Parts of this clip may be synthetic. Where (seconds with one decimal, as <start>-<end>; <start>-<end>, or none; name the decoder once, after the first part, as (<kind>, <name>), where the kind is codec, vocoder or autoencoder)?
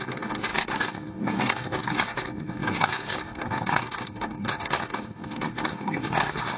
0.0-6.6 (codec, SNAC)